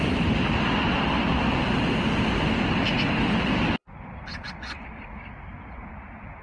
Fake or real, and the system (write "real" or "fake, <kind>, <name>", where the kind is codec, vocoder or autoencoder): real